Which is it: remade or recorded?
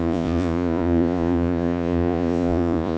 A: remade